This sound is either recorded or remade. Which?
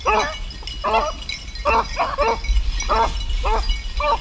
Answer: recorded